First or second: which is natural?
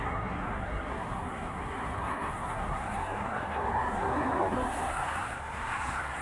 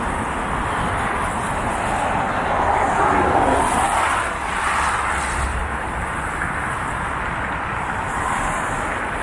second